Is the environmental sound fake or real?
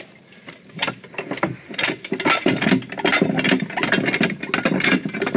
real